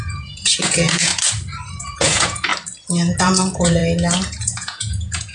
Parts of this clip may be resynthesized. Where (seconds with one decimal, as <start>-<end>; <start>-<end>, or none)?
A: 0.0-1.1; 1.8-2.5; 3.2-3.8; 4.4-5.3